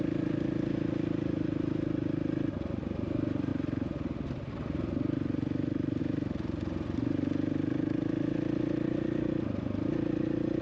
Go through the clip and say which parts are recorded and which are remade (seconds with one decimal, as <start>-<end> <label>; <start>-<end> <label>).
0.0-10.6 recorded